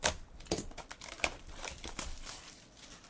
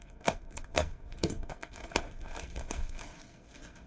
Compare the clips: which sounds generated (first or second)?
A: second